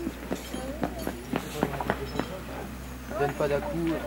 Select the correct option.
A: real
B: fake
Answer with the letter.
A